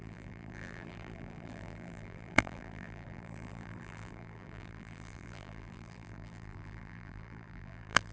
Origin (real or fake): fake